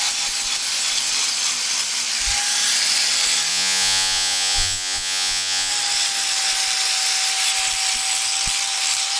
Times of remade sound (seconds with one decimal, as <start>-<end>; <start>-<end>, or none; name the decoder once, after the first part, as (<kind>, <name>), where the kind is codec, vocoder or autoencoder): 3.5-5.7 (vocoder, Vocos)